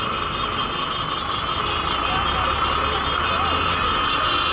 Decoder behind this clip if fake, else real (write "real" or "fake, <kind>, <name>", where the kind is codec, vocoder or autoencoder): real